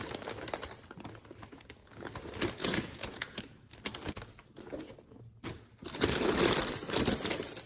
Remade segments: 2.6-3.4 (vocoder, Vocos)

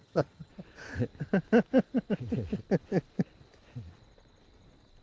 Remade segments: 0.0-0.5 (vocoder, HiFi-GAN)

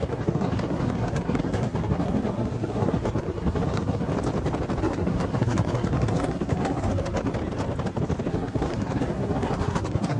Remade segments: 0.0-4.1 (codec, SNAC); 4.8-7.3; 8.3-10.2

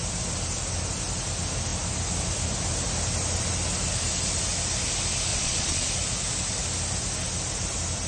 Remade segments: 5.3-5.9 (vocoder, Vocos)

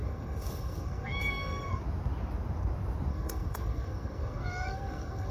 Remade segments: 0.0-1.8 (codec, SNAC); 3.1-5.3